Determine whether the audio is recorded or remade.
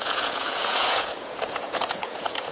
remade